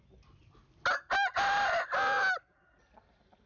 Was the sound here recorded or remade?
recorded